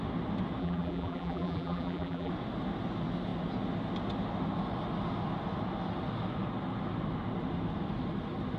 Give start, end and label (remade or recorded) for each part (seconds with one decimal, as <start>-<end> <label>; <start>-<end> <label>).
0.0-0.6 recorded; 0.6-2.3 remade; 2.3-8.6 recorded